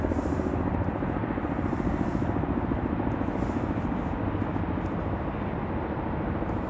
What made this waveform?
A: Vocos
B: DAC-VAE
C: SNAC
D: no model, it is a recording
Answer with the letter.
D